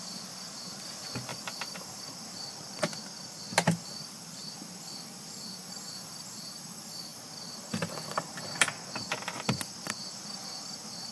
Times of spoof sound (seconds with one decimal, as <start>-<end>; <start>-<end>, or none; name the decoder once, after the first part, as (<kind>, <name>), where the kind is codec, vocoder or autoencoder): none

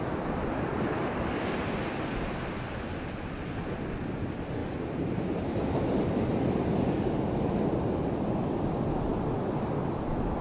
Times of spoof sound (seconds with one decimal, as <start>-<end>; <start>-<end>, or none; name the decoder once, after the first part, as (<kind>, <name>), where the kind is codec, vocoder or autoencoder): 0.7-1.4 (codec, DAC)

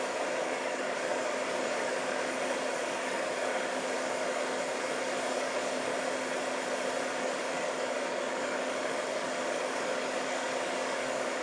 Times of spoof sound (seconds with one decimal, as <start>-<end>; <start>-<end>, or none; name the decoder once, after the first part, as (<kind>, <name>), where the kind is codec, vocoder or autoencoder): 0.0-5.9 (codec, DAC); 7.2-11.4